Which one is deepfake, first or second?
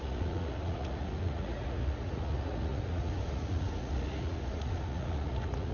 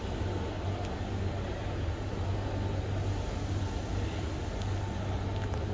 first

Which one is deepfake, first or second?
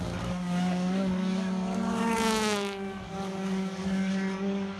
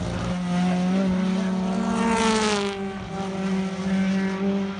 first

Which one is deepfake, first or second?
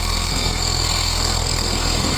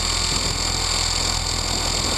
first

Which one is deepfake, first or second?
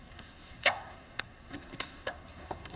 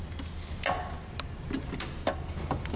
first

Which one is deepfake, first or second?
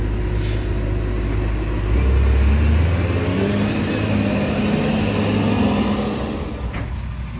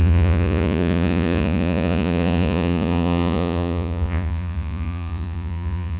second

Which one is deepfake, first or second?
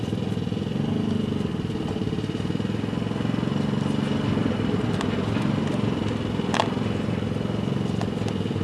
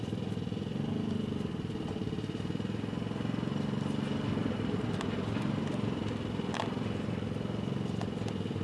second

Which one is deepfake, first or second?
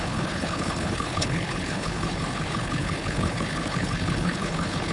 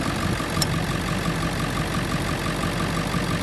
first